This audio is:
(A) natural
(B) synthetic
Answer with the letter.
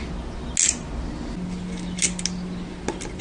A